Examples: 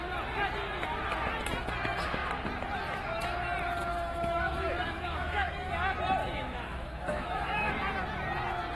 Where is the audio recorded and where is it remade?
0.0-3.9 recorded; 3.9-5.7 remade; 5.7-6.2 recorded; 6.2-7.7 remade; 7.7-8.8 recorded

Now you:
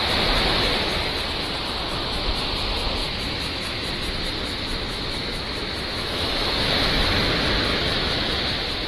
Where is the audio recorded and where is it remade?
0.0-3.0 recorded; 3.0-3.9 remade; 3.9-4.9 recorded; 4.9-6.7 remade; 6.7-7.7 recorded; 7.7-8.4 remade; 8.4-8.9 recorded

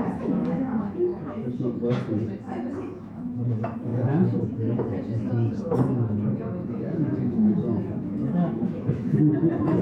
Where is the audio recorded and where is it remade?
0.0-9.8 remade